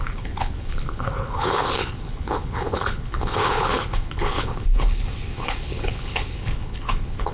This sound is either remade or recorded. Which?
remade